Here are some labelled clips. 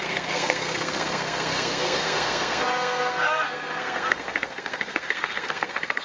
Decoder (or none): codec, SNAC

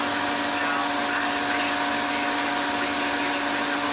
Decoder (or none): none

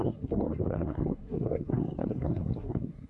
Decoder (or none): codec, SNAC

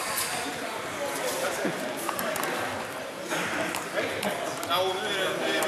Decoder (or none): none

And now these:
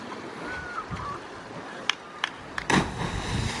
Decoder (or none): none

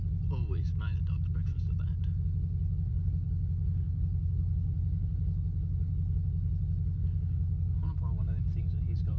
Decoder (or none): none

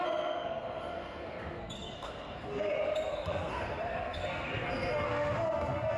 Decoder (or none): codec, SNAC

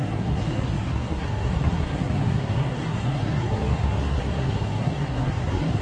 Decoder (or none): codec, SNAC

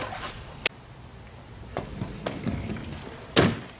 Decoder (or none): none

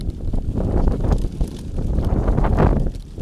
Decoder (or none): none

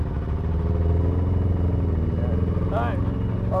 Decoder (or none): none